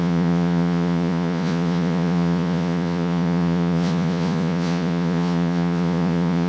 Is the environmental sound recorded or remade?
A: remade